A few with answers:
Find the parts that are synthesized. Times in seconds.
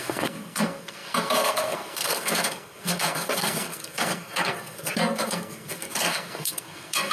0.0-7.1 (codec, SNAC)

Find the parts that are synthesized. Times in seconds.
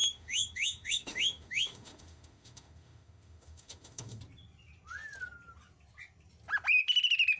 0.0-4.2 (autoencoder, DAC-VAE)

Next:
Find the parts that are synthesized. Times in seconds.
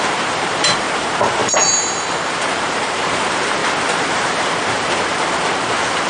0.0-3.6 (vocoder, BigVGAN v2)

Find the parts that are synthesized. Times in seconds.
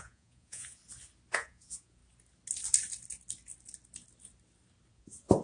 0.0-0.8 (vocoder, Vocos); 1.3-2.0; 4.9-5.4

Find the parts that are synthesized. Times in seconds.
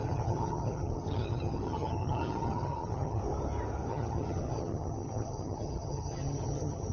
0.0-3.2 (vocoder, HiFi-GAN); 3.9-6.9